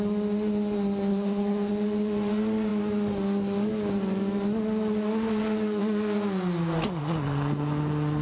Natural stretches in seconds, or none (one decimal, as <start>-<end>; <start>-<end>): 0.0-1.1; 1.7-8.2